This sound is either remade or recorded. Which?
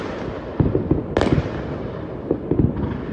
recorded